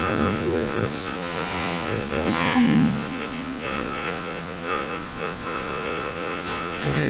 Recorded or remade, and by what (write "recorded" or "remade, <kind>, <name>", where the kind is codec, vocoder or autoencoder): remade, vocoder, Vocos